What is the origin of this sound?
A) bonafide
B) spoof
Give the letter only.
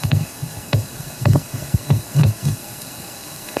B